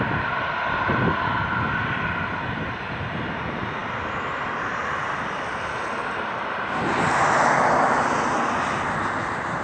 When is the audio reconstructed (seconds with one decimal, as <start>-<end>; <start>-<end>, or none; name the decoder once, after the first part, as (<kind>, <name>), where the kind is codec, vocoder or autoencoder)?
none